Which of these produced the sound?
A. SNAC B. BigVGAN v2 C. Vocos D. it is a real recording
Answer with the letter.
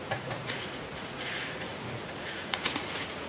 C